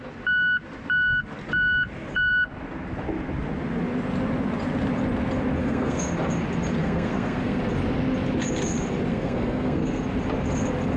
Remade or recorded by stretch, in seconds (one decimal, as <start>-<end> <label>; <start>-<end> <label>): 0.0-5.6 recorded; 5.6-6.1 remade; 6.1-6.8 recorded; 6.8-7.6 remade; 7.6-9.1 recorded; 9.1-10.0 remade; 10.0-11.0 recorded